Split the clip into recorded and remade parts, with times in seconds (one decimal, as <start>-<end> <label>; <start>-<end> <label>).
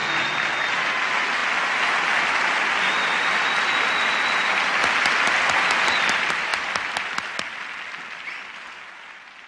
0.0-9.5 recorded